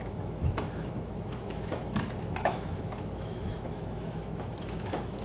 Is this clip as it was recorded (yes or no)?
no